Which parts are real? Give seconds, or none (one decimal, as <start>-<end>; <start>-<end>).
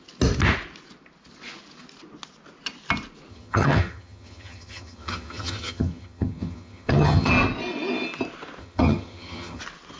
0.0-3.3; 7.3-8.6; 9.6-10.0